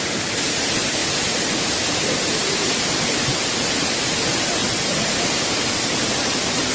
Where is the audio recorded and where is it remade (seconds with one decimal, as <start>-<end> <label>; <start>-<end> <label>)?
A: 0.0-6.7 remade